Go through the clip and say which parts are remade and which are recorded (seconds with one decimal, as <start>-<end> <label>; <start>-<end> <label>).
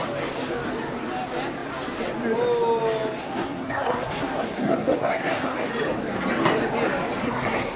0.0-3.2 recorded; 3.2-5.7 remade; 5.7-7.2 recorded; 7.2-7.8 remade